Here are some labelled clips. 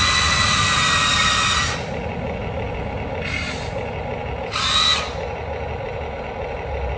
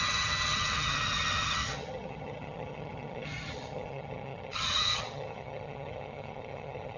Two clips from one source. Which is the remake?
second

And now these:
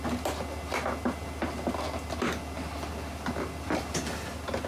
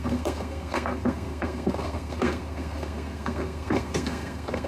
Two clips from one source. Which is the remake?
second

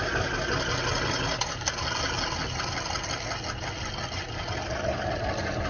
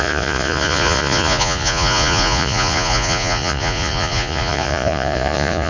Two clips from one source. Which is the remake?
second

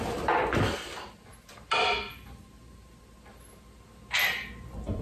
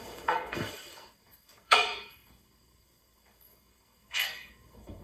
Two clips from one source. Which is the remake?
second